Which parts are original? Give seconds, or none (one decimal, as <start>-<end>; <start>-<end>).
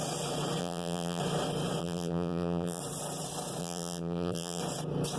0.0-0.6; 1.2-1.8; 2.8-3.6; 4.6-5.2